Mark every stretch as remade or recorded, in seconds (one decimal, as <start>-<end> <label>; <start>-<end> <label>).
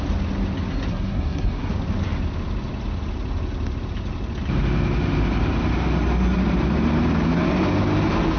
0.0-0.9 recorded; 0.9-1.7 remade; 1.7-8.4 recorded